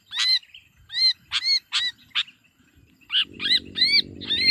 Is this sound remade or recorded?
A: recorded